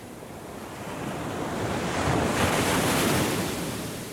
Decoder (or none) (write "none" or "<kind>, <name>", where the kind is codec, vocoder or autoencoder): vocoder, BigVGAN v2